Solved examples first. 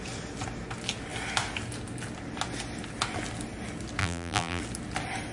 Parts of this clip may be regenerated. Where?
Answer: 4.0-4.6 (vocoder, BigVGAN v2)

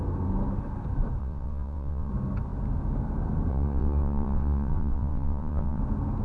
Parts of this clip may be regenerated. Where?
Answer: 1.2-2.1 (vocoder, WaveNeXt); 3.5-5.8

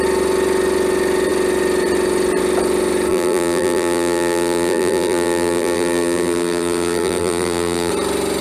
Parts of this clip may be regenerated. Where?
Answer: 3.1-7.9 (vocoder, BigVGAN v2)

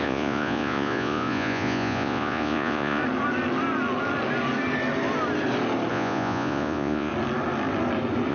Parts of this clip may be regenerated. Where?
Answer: 0.0-3.0 (vocoder, Vocos); 5.9-7.1